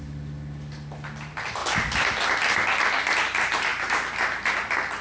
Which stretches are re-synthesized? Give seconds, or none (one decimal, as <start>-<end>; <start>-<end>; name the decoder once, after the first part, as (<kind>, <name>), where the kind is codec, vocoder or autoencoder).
none